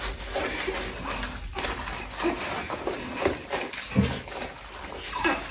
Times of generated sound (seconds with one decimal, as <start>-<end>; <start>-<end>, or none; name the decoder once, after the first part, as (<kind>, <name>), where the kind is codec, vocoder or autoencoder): none